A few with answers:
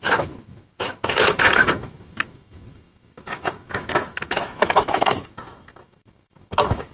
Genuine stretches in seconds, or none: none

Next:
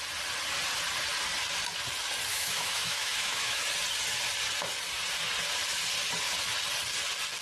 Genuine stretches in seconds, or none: 0.0-2.3; 3.6-7.4

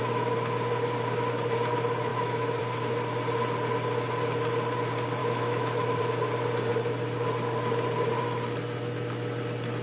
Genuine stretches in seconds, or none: 0.0-2.1; 2.6-5.2; 6.0-9.8

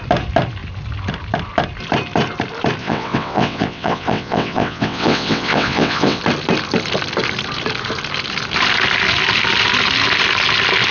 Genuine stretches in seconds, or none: 0.0-2.8; 6.2-10.9

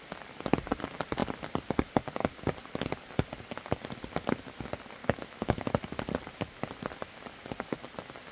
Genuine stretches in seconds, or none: 0.0-5.0; 5.7-8.3

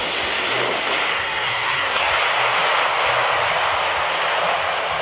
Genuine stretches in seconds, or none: 0.0-1.1; 2.1-5.0

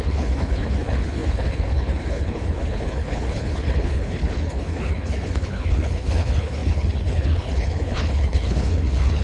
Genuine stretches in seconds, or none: none

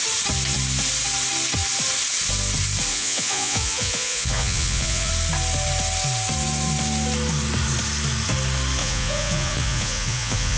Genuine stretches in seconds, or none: 0.0-2.9; 5.1-8.8